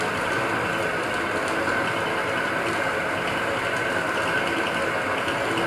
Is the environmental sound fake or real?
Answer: real